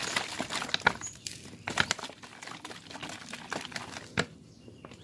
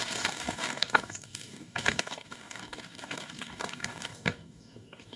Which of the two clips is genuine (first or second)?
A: first